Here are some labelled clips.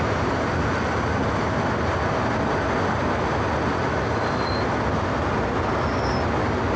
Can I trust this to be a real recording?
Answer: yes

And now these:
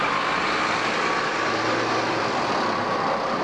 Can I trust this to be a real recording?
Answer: yes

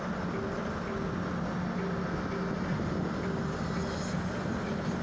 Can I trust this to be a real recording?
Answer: yes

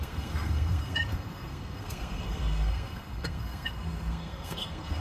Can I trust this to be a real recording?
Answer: no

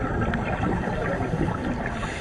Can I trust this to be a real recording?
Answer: yes